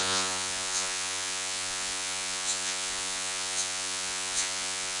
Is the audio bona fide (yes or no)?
no